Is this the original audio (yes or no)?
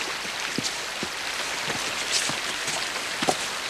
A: yes